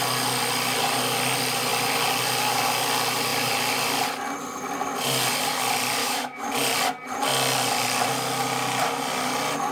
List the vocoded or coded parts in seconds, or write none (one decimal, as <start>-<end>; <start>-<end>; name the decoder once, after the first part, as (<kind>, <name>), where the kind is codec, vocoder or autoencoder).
6.0-6.5 (autoencoder, DAC-VAE)